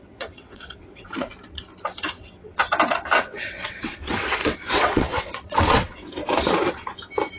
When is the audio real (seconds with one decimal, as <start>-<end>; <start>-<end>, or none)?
1.3-2.0; 2.6-3.2; 6.2-7.4